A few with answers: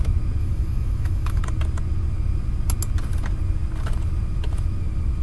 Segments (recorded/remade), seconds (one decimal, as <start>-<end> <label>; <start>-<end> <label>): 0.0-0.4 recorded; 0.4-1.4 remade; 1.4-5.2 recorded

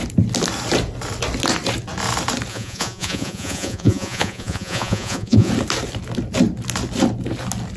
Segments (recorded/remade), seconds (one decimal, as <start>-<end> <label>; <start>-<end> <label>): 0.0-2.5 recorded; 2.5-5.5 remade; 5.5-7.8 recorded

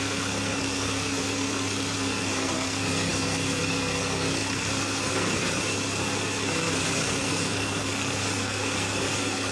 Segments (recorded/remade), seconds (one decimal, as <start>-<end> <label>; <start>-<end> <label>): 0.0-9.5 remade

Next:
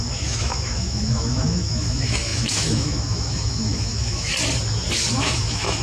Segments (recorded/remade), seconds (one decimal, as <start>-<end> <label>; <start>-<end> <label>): 0.0-4.3 remade; 4.3-5.1 recorded; 5.1-5.8 remade

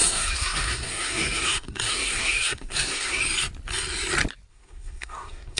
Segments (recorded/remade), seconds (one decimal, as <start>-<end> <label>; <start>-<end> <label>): 0.0-3.2 remade; 3.2-4.5 recorded; 4.5-5.6 remade

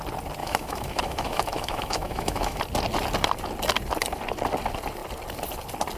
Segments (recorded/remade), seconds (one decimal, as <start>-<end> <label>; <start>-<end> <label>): 0.0-0.4 recorded; 0.4-2.6 remade; 2.6-6.0 recorded